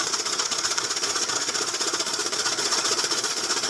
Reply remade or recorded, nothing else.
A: remade